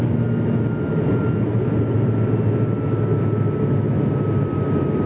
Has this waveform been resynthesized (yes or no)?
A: no